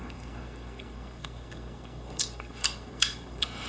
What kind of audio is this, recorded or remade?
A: remade